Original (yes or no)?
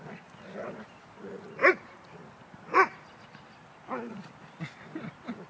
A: yes